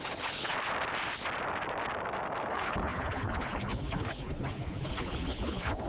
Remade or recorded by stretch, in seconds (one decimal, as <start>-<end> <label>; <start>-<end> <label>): 0.0-0.5 remade; 0.5-2.5 recorded; 2.5-5.9 remade